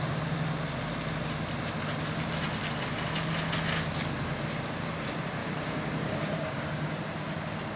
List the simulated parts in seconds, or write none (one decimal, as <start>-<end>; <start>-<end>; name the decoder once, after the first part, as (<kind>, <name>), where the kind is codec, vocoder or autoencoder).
5.4-7.0 (codec, DAC)